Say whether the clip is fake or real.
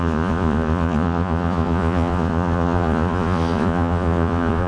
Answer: fake